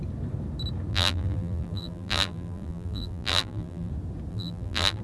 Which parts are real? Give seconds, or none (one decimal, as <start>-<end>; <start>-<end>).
0.0-0.9; 3.9-4.3